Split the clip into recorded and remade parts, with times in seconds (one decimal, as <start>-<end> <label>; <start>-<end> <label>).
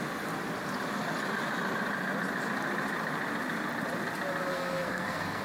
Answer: 0.0-4.5 recorded; 4.5-5.4 remade